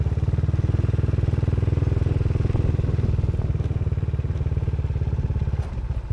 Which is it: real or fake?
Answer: real